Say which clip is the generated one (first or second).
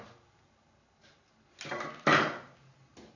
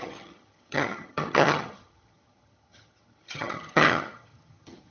second